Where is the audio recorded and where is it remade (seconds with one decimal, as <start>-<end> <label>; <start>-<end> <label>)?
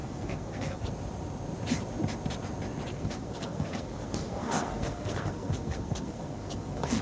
0.0-0.9 remade; 0.9-2.9 recorded; 2.9-7.0 remade